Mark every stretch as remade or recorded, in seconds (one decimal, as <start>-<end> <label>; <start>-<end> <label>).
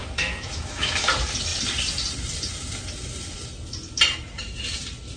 0.0-1.1 remade; 1.1-5.2 recorded